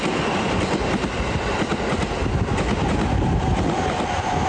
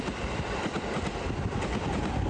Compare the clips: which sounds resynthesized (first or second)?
second